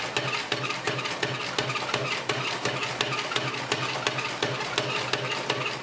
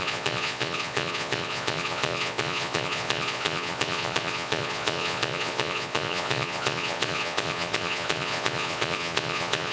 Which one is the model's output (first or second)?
second